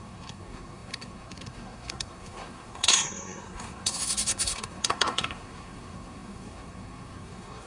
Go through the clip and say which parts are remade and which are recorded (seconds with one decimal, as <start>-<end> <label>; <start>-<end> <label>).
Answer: 0.0-7.7 remade